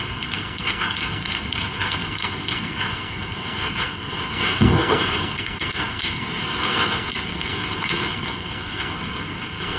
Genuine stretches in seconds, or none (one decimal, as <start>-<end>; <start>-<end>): none